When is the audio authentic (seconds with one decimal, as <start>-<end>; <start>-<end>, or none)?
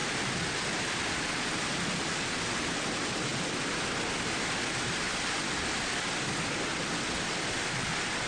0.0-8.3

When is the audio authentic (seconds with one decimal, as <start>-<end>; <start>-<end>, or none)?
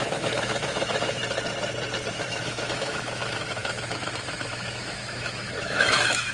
1.2-2.1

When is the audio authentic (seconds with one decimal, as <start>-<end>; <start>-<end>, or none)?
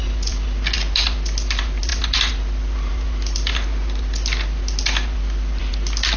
0.0-6.2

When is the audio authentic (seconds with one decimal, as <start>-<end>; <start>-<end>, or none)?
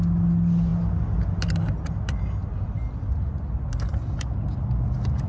0.0-5.3